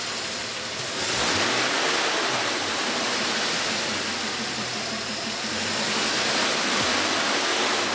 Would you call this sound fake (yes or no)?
no